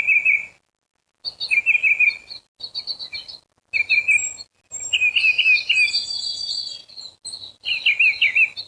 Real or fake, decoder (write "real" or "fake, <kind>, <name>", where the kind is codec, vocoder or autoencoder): real